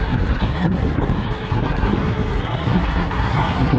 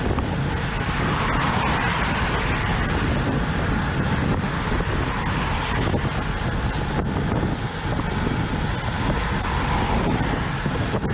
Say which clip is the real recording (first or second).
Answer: second